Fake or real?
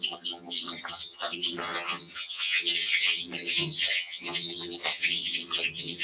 fake